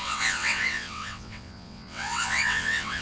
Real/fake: fake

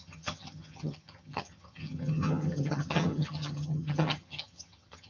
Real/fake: fake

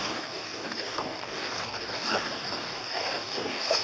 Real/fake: fake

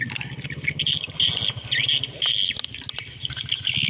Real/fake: real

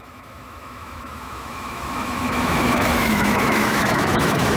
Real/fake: fake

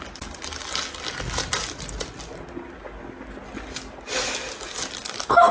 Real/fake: real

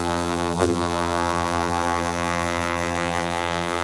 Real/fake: fake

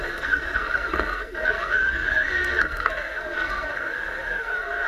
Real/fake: fake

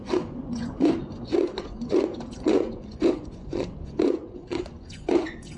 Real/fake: fake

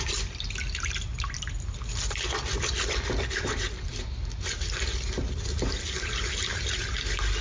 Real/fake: real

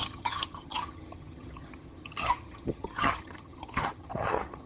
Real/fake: fake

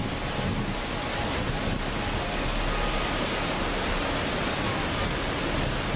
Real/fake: real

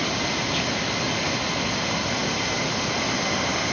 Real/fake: real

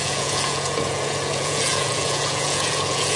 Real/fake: fake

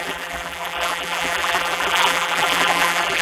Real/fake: fake